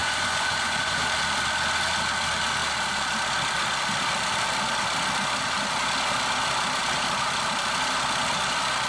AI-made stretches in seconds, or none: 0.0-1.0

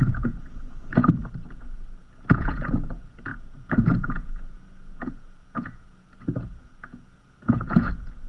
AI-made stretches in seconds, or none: 0.0-8.3

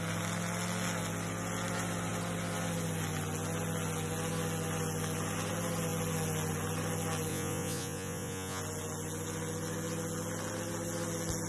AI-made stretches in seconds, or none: 7.3-8.6

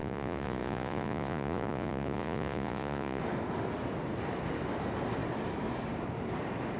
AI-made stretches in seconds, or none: 0.0-3.2

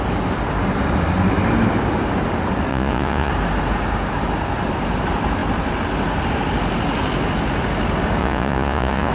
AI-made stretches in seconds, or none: 2.7-3.3; 8.2-9.1

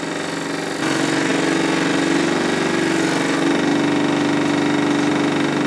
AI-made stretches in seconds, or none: none

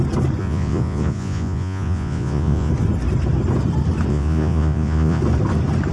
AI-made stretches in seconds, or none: 0.4-2.7; 4.1-5.2